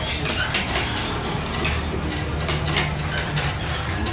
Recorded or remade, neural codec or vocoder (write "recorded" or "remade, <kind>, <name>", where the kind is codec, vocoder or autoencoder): recorded